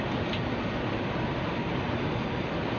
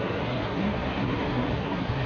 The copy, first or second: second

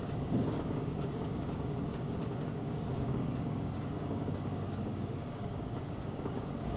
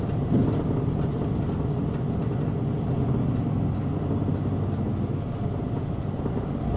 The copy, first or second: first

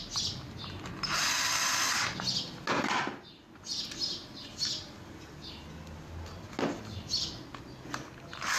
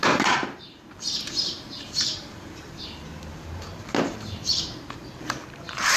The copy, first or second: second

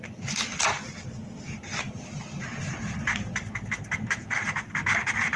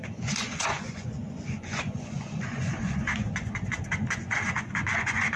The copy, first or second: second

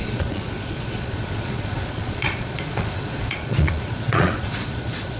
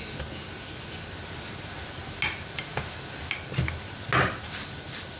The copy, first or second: first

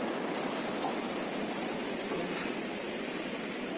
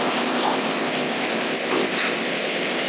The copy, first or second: second